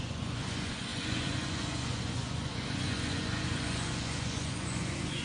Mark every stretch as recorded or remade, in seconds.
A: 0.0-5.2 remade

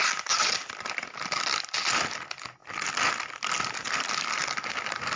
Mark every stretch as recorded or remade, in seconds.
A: 0.0-5.2 recorded

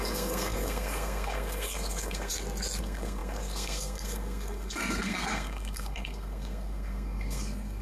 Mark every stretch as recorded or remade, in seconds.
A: 0.0-2.3 remade; 2.3-2.8 recorded; 2.8-7.8 remade